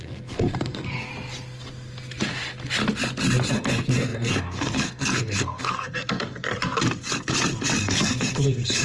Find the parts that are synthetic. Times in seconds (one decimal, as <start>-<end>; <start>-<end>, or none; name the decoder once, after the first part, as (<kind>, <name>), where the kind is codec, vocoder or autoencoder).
0.0-1.1 (codec, SNAC); 3.5-6.5; 7.8-8.8